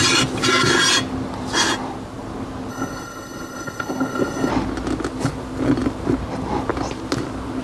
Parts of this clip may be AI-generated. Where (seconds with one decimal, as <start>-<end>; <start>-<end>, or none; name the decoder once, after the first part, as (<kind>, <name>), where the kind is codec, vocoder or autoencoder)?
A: 2.7-4.5 (codec, HILCodec)